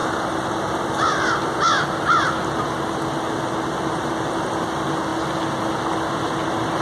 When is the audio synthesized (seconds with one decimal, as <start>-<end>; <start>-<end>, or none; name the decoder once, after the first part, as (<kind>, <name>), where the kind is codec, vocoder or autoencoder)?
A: none